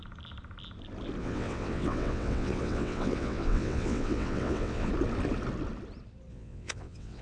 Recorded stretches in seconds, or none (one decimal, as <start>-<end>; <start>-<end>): 0.0-1.2; 4.9-6.3